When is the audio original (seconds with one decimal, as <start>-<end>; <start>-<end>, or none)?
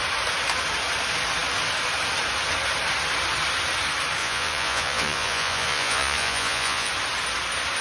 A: 0.0-4.2; 6.9-7.8